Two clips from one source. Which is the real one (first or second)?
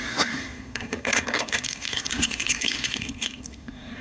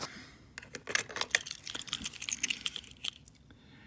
second